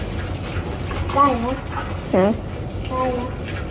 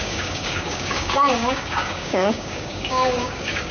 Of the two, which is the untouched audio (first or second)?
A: first